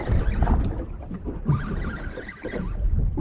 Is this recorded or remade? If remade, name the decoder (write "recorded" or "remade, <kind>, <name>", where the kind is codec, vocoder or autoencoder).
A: recorded